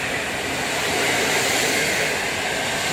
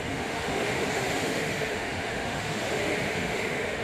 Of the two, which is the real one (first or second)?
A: first